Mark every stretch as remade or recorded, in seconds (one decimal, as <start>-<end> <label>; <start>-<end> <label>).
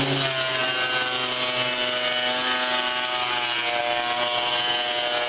0.0-5.3 recorded